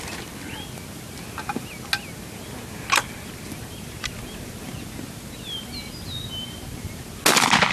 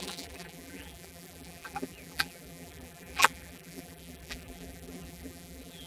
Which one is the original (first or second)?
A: first